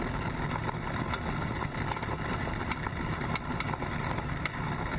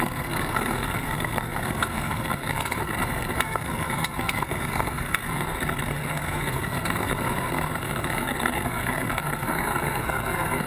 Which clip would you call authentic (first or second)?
first